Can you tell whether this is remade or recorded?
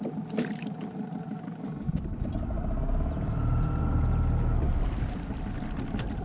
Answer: recorded